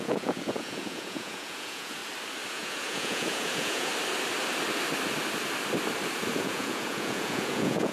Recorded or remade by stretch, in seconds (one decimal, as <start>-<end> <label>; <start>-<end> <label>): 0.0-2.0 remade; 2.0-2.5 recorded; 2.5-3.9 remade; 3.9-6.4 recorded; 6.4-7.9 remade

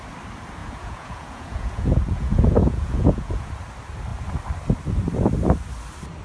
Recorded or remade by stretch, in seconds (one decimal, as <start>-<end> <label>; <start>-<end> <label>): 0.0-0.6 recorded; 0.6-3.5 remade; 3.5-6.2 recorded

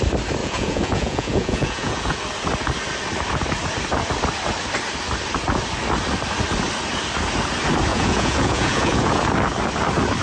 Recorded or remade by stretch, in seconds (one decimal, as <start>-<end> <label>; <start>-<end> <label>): 0.0-0.4 recorded; 0.4-2.2 remade; 2.2-7.9 recorded; 7.9-9.2 remade; 9.2-10.2 recorded

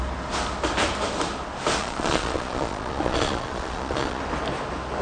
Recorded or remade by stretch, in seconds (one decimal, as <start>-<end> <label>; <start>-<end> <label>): 0.0-1.8 recorded; 1.8-4.2 remade; 4.2-5.0 recorded

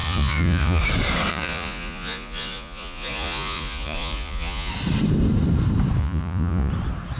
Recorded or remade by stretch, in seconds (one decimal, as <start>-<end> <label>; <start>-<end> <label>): 0.0-0.8 remade; 0.8-1.3 recorded; 1.3-4.7 remade; 4.7-6.0 recorded; 6.0-6.7 remade; 6.7-7.2 recorded